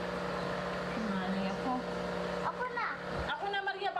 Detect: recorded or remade recorded